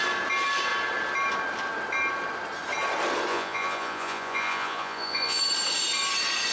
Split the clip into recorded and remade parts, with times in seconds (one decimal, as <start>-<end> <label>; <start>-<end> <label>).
0.0-3.3 recorded; 3.3-5.4 remade; 5.4-6.5 recorded